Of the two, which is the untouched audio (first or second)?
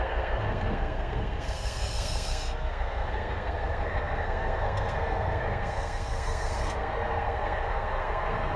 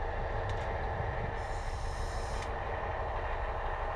second